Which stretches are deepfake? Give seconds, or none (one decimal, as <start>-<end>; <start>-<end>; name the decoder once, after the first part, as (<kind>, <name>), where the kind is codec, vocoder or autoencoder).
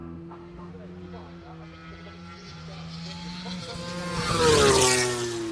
0.0-0.7 (autoencoder, DAC-VAE)